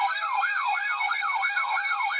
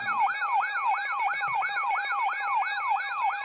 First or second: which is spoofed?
first